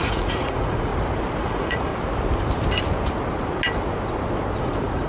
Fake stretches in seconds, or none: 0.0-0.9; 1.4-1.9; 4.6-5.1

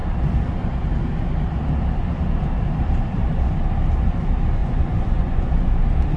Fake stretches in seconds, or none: 4.6-5.5

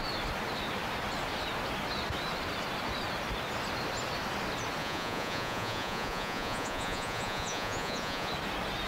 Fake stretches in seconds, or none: 4.8-8.3

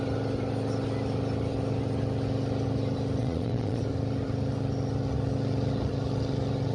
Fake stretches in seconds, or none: 3.2-3.8

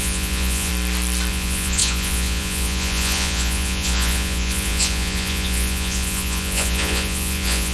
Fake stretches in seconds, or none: 0.0-0.7; 1.3-7.7